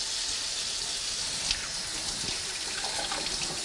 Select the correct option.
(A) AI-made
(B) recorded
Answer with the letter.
B